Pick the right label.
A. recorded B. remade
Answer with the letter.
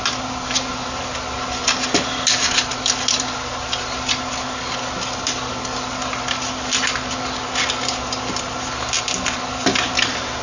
A